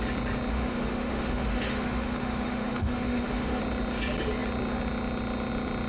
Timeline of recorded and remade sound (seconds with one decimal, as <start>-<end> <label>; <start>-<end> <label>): 0.0-0.5 recorded; 0.5-3.6 remade; 3.6-5.9 recorded